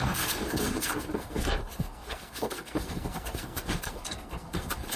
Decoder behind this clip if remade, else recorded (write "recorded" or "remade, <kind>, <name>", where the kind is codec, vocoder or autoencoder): remade, codec, SNAC